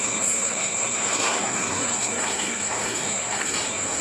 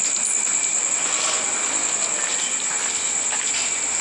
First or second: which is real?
second